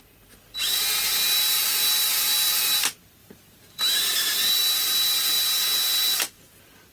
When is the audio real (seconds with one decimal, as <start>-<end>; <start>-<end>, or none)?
0.0-3.2; 4.5-6.9